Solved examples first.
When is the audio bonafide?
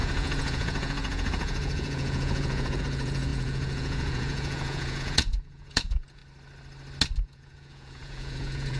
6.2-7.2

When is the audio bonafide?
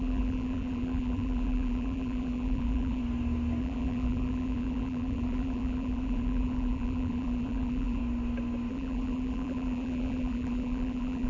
3.0-3.6; 8.0-8.7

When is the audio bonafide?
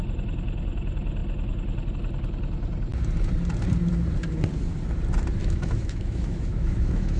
0.0-5.4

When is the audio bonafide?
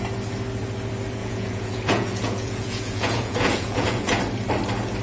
0.0-1.2; 4.2-5.0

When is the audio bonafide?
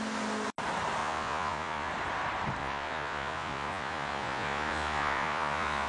0.0-1.0; 1.9-2.6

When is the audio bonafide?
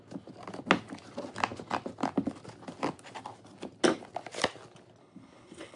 0.0-5.0